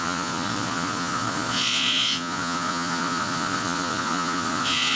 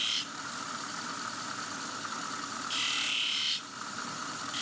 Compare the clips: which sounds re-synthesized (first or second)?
first